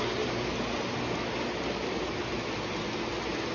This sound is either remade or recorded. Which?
recorded